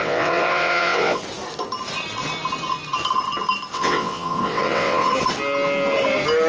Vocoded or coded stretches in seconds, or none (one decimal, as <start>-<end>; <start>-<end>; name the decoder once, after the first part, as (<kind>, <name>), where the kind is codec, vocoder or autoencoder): 0.0-1.2 (vocoder, WaveNeXt); 3.7-5.1